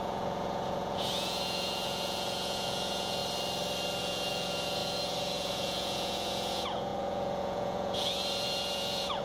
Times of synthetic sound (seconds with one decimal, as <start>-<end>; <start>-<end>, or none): 0.0-3.2; 4.0-9.2